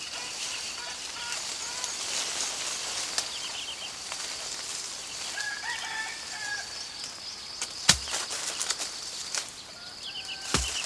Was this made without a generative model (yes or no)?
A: yes